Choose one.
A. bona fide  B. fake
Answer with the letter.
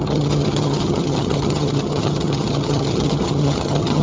B